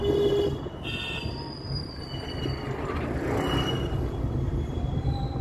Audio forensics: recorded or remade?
recorded